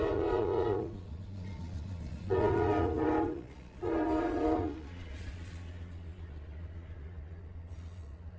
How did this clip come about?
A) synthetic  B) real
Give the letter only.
A